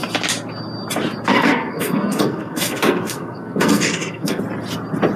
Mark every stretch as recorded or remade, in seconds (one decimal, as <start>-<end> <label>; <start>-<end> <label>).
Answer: 0.0-1.3 recorded; 1.3-4.4 remade; 4.4-5.2 recorded